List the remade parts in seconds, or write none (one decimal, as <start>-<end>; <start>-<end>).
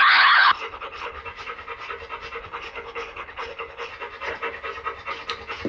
0.0-1.2; 2.4-3.9